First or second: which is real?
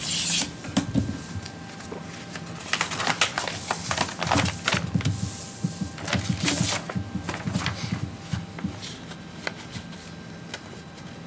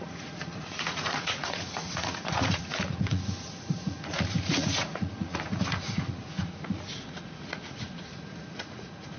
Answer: first